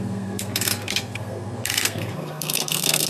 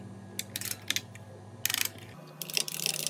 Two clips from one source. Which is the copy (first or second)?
first